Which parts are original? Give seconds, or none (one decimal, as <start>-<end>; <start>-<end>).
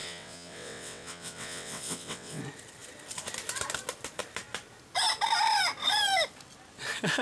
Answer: 2.4-7.2